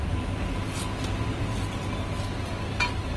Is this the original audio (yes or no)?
yes